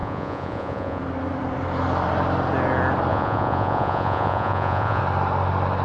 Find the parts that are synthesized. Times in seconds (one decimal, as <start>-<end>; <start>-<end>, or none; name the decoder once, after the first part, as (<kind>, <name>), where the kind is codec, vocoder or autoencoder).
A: 0.0-1.0 (vocoder, Vocos); 3.1-5.0